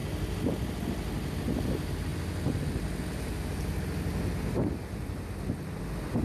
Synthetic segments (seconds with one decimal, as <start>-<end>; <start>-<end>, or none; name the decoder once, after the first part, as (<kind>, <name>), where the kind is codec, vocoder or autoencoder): none